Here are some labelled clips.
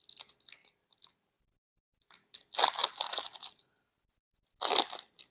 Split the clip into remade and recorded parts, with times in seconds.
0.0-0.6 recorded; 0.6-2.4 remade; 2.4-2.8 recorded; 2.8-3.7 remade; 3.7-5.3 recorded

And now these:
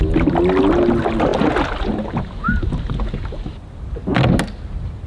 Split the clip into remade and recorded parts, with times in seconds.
0.0-5.1 recorded

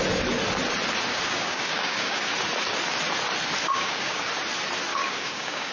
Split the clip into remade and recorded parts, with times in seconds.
0.0-1.1 recorded; 1.1-2.2 remade; 2.2-3.6 recorded; 3.6-4.3 remade; 4.3-4.9 recorded; 4.9-5.7 remade

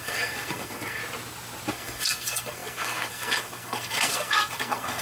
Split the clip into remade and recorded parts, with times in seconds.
0.0-1.0 remade; 1.0-1.7 recorded; 1.7-5.0 remade

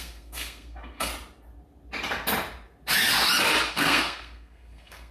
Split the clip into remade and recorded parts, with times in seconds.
0.0-1.1 remade; 1.1-3.7 recorded; 3.7-5.1 remade